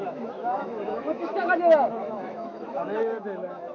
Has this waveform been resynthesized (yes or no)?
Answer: yes